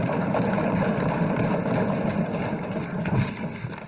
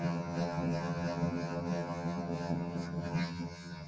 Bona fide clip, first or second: first